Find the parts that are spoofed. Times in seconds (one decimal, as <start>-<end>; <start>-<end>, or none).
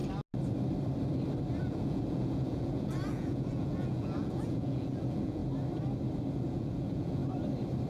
1.6-5.4; 6.3-7.2